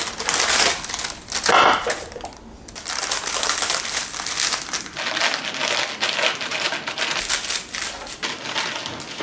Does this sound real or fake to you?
real